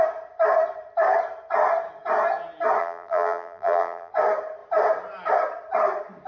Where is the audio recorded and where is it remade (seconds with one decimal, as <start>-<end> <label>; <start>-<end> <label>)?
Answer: 0.0-2.8 recorded; 2.8-4.1 remade; 4.1-6.3 recorded